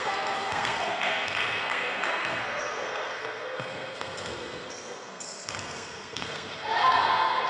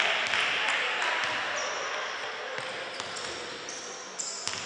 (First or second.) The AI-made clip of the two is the first